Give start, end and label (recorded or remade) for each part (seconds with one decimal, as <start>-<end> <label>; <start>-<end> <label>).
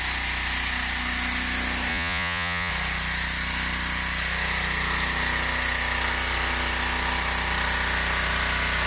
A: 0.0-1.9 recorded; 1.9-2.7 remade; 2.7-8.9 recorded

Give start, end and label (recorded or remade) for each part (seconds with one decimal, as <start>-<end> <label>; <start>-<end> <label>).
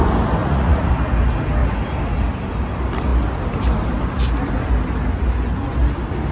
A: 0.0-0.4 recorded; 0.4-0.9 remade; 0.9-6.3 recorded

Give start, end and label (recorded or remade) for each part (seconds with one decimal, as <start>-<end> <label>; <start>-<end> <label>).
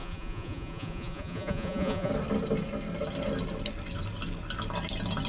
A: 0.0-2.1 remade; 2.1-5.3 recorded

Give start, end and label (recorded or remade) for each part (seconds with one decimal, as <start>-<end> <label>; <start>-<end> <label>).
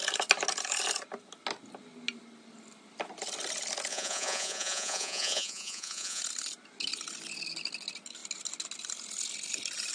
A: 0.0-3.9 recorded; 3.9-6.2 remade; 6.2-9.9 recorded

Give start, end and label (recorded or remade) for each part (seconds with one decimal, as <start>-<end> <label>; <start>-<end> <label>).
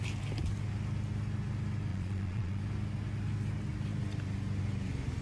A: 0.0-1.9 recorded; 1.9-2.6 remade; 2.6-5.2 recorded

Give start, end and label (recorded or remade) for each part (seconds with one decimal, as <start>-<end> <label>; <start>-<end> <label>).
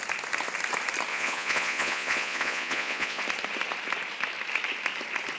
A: 0.0-1.1 recorded; 1.1-3.2 remade; 3.2-5.4 recorded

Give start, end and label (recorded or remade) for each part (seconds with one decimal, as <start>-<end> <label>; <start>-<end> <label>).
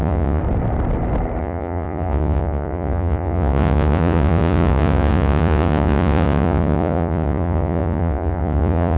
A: 0.0-0.4 remade; 0.4-1.4 recorded; 1.4-9.0 remade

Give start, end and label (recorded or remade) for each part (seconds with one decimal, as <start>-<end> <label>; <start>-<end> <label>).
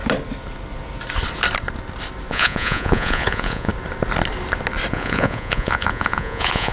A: 0.0-2.3 recorded; 2.3-3.7 remade; 3.7-4.9 recorded; 4.9-6.7 remade